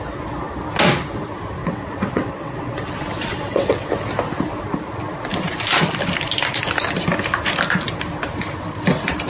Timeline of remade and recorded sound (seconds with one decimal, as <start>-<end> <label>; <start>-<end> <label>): 0.0-1.6 recorded; 1.6-2.9 remade; 2.9-3.3 recorded; 3.3-3.9 remade; 3.9-9.3 recorded